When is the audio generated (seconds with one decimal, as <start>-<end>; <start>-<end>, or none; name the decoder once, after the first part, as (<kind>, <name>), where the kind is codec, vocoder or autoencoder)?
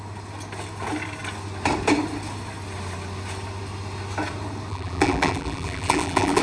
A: 4.7-6.4 (vocoder, BigVGAN v2)